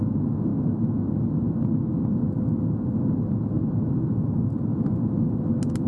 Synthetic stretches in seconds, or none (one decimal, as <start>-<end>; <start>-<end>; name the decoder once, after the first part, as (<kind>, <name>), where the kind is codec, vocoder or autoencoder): none